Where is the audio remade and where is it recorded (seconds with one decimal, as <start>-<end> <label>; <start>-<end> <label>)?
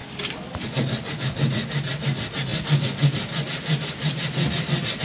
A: 0.0-5.0 recorded